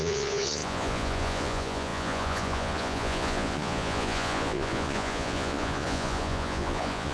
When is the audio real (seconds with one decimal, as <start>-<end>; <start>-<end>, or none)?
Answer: none